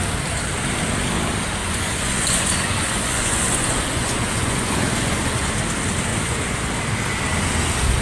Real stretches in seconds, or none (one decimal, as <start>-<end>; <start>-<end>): 0.0-1.6; 5.5-6.1; 6.7-8.0